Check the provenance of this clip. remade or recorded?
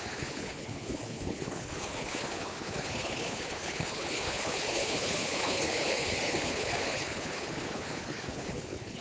remade